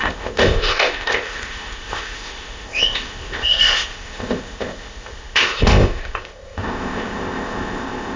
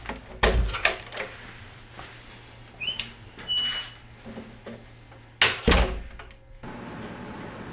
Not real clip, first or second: first